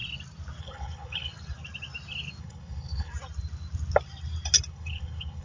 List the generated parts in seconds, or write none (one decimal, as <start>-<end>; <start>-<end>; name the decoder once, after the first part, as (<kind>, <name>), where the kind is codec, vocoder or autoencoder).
0.6-1.3 (codec, HILCodec); 2.4-3.1; 4.7-5.4

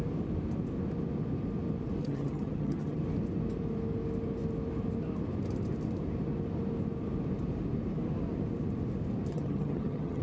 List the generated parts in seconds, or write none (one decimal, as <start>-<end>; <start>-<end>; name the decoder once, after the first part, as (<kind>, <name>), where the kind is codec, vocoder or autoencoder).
2.0-3.0 (vocoder, HiFi-GAN); 9.3-10.2

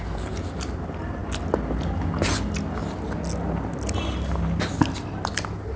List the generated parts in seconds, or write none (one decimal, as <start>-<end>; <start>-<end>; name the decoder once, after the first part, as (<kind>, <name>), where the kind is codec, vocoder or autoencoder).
none

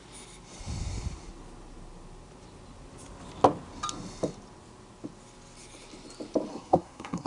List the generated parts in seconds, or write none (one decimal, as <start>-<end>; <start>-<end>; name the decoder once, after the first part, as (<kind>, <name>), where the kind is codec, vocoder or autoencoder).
6.5-7.3 (codec, SNAC)